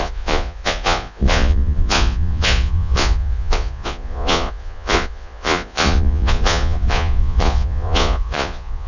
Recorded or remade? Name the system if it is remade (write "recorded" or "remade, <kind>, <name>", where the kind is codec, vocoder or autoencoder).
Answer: remade, vocoder, Vocos